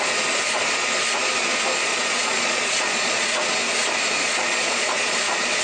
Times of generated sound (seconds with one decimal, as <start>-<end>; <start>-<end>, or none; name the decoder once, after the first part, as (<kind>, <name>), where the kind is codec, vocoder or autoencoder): 1.8-3.4 (vocoder, Vocos); 4.2-5.6